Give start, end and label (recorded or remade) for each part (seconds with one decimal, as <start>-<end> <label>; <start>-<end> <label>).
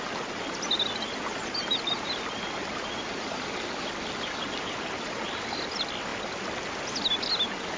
0.0-7.8 recorded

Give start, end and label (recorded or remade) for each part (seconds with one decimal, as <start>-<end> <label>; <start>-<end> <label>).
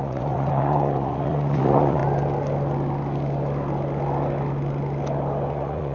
0.0-2.0 remade; 2.0-5.5 recorded; 5.5-5.9 remade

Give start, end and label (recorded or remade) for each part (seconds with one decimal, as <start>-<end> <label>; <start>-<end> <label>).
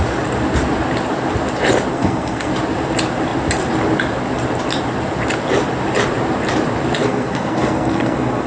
0.0-1.9 recorded; 1.9-2.5 remade; 2.5-7.0 recorded; 7.0-8.5 remade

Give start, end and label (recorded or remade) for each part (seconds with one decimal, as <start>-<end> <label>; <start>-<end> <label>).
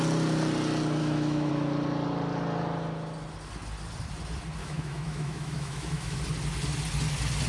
0.0-1.0 recorded; 1.0-1.5 remade; 1.5-4.6 recorded; 4.6-6.2 remade; 6.2-7.5 recorded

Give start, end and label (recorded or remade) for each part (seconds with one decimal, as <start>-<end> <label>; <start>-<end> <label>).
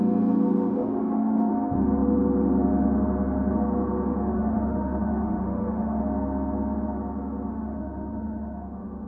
0.0-0.7 recorded; 0.7-1.5 remade; 1.5-4.3 recorded; 4.3-6.0 remade; 6.0-7.5 recorded; 7.5-9.1 remade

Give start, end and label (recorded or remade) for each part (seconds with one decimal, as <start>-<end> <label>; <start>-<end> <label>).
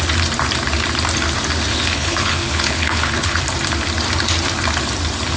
0.0-1.7 recorded; 1.7-3.4 remade; 3.4-5.4 recorded